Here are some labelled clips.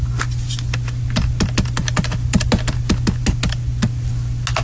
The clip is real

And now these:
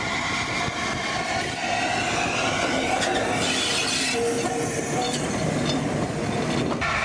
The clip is real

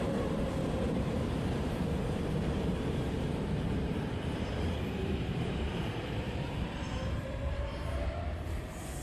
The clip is fake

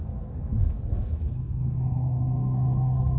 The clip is fake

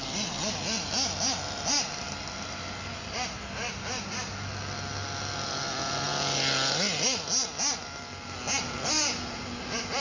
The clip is real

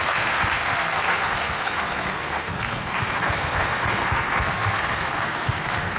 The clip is fake